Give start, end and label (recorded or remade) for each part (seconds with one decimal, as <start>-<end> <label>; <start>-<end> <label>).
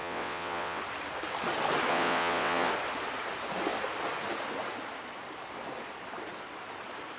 0.0-0.8 remade; 0.8-1.9 recorded; 1.9-2.7 remade; 2.7-7.2 recorded